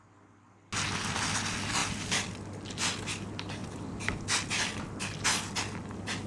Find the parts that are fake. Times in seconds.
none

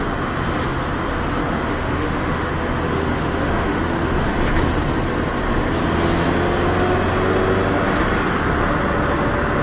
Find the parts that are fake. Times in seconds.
1.4-2.5 (autoencoder, DAC-VAE); 2.9-4.3